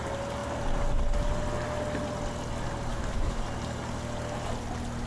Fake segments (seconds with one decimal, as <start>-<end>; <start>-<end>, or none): 2.9-3.4